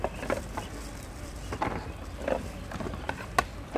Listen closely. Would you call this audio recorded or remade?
recorded